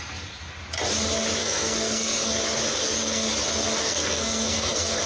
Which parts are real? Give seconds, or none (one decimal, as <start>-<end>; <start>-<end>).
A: 0.0-1.4; 2.4-2.8; 3.3-3.8